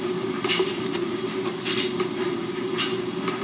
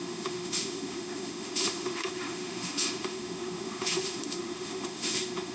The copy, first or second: second